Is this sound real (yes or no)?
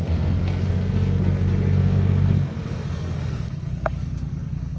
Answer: no